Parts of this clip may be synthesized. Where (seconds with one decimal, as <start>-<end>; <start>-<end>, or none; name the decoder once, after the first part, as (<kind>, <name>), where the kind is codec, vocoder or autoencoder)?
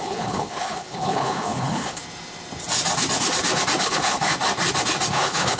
0.0-2.0 (codec, HILCodec); 3.8-4.3; 5.1-5.6